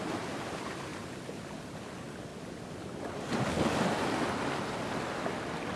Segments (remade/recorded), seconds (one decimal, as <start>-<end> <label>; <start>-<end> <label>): 0.0-5.8 recorded